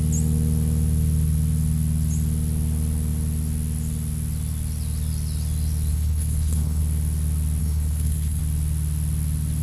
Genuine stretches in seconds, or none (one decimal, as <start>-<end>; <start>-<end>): 0.0-5.9; 6.8-7.6; 8.4-9.6